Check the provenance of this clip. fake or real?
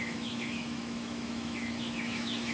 fake